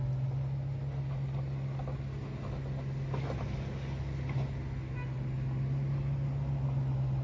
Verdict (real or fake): real